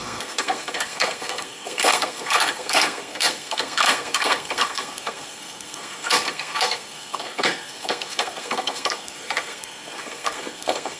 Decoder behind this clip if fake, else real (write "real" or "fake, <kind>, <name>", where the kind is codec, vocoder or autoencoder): fake, codec, SNAC